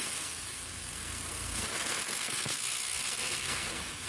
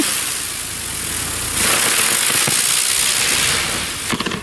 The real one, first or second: second